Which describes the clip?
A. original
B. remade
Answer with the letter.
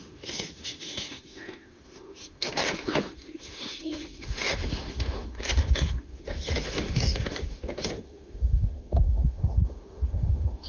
B